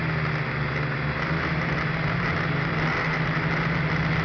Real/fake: real